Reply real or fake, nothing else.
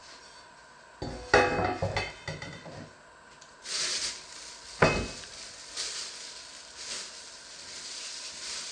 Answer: real